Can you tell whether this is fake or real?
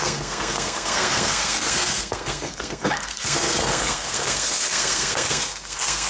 fake